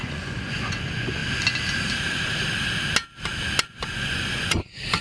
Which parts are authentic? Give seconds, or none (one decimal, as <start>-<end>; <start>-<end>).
1.2-3.6

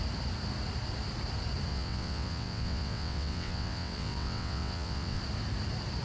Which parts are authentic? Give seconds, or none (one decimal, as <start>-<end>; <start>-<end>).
0.0-1.7; 5.2-6.0

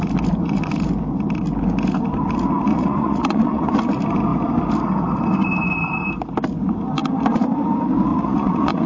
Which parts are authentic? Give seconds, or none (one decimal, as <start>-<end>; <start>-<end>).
0.0-2.7; 3.7-8.1

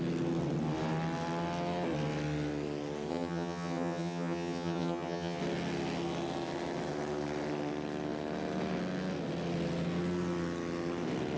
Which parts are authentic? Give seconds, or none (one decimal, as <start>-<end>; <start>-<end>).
0.0-3.1; 5.4-11.4

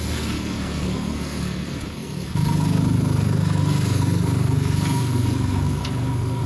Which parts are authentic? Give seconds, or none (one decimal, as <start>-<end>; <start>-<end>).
none